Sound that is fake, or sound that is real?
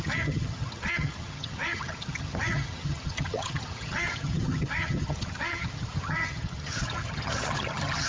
fake